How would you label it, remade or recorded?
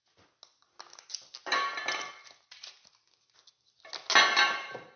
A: recorded